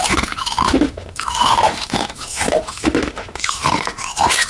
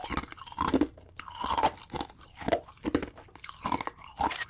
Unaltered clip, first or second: second